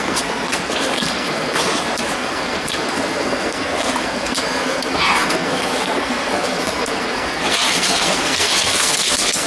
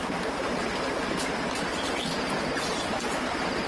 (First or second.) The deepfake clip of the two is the first